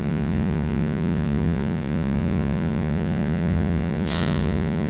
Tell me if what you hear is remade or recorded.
remade